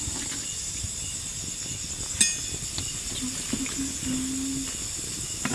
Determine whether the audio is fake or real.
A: real